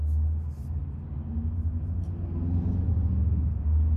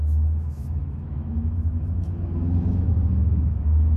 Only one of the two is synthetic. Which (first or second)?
second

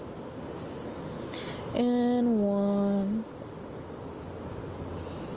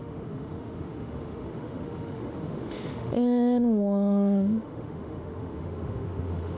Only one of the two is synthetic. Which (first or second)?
second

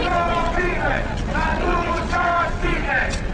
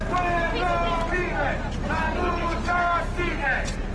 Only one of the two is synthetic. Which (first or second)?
first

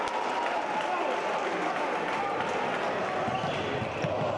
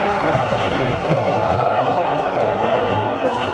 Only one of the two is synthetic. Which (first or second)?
second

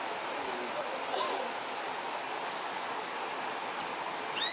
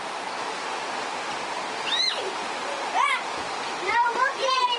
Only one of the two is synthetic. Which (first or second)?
second